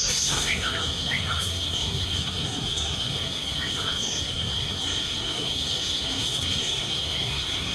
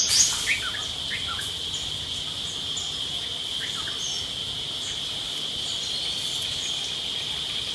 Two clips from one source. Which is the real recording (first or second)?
second